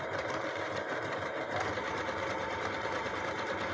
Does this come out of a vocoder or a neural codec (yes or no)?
yes